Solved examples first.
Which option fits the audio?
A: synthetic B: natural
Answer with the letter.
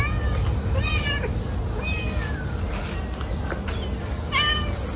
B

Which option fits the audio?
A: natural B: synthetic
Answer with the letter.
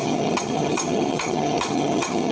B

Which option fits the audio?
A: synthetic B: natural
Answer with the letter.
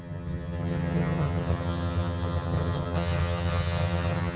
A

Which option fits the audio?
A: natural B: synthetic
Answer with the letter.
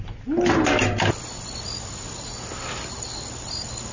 A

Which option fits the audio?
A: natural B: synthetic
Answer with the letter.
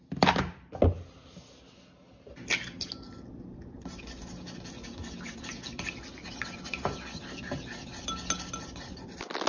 A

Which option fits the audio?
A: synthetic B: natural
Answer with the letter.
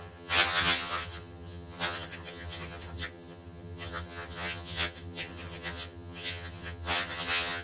A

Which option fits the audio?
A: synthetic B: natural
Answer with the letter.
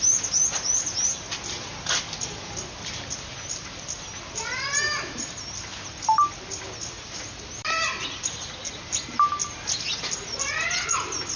B